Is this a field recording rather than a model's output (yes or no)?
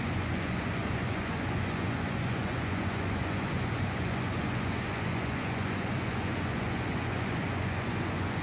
no